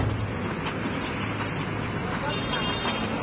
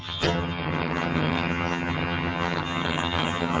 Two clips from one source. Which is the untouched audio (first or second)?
first